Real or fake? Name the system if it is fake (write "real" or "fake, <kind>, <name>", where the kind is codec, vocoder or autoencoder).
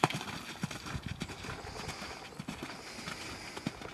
real